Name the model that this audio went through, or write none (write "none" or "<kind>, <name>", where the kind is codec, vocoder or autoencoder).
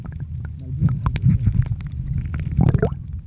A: none